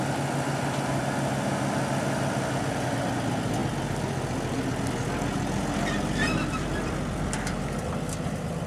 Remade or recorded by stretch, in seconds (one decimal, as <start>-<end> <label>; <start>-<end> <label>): 0.0-8.7 recorded